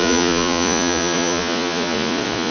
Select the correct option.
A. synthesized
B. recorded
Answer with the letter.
A